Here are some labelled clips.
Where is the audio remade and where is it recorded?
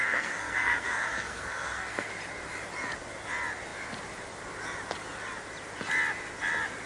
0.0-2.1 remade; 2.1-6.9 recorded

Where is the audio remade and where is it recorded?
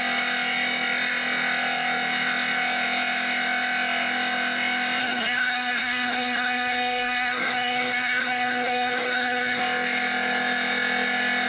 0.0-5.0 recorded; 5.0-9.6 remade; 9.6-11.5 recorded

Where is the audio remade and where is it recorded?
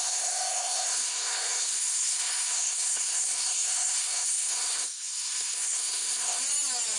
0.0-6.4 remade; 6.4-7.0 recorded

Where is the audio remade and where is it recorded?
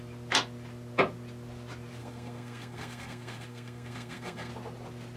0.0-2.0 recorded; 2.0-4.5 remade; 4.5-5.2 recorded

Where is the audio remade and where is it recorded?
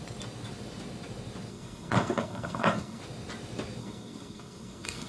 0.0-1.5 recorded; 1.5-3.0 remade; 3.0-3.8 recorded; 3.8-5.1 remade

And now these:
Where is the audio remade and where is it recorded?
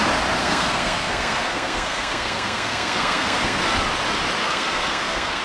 0.0-0.4 recorded; 0.4-3.6 remade; 3.6-4.4 recorded; 4.4-5.4 remade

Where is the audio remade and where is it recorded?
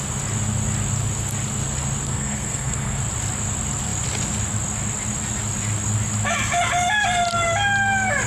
0.0-2.1 recorded; 2.1-3.0 remade; 3.0-8.3 recorded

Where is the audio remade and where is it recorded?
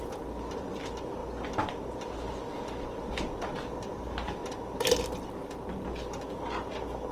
0.0-7.1 recorded